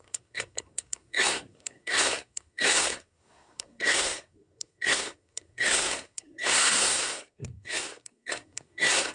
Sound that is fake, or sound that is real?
fake